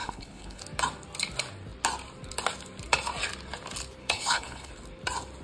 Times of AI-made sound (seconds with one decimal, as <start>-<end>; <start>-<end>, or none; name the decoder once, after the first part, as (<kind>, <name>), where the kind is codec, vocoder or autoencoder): 0.0-0.6 (codec, HILCodec); 4.0-4.7